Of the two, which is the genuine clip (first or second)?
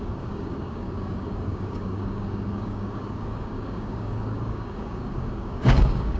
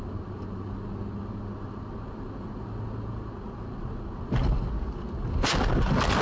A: second